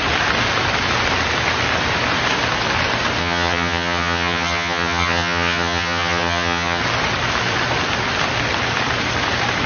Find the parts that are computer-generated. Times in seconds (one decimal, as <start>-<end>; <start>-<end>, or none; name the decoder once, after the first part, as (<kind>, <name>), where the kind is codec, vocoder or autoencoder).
3.2-6.8 (vocoder, HiFi-GAN)